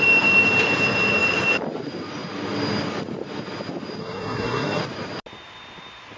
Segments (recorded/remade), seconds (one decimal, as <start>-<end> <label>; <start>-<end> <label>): 0.0-4.0 recorded; 4.0-4.8 remade; 4.8-6.2 recorded